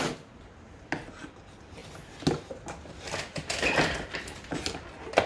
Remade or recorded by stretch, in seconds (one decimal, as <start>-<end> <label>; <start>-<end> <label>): 0.0-5.3 recorded